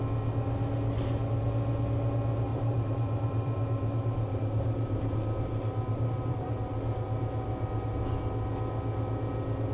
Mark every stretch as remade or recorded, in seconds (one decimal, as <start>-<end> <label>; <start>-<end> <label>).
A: 0.0-2.5 recorded; 2.5-6.5 remade; 6.5-9.7 recorded